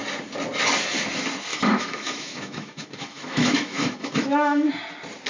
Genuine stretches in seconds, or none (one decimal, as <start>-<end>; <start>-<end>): 0.0-1.5; 4.7-5.3